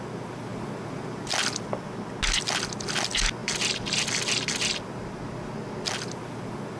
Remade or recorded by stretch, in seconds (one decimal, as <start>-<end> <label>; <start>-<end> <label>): 0.0-6.8 recorded